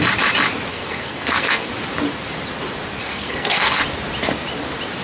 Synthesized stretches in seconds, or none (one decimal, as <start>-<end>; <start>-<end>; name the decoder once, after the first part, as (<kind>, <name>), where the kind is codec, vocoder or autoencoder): 0.7-1.7 (codec, SNAC); 3.0-3.8